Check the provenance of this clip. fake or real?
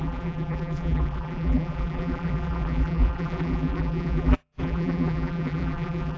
fake